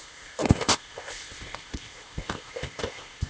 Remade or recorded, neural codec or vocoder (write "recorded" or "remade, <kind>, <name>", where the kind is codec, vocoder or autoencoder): remade, codec, ZipCodec